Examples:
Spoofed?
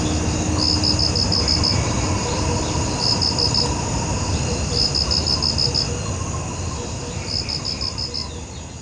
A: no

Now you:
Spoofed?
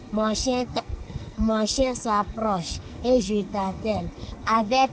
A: yes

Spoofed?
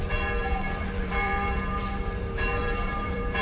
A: yes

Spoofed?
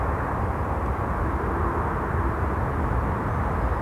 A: no